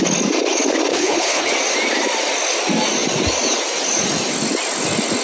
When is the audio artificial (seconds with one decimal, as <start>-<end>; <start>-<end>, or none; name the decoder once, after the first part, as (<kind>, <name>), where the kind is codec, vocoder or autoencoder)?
0.9-1.5 (codec, HILCodec)